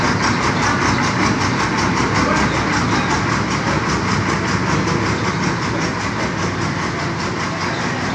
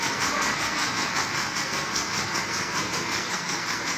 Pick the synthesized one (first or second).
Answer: second